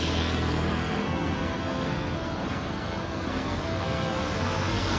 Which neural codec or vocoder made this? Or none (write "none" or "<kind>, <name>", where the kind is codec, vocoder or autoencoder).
codec, SNAC